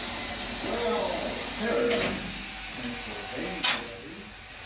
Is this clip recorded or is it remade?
recorded